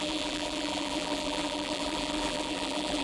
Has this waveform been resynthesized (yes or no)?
yes